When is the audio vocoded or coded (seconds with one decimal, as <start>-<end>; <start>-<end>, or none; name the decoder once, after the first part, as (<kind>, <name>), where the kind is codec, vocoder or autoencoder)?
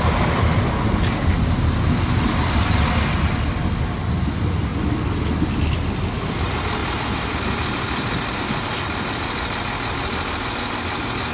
6.8-8.8 (vocoder, BigVGAN v2)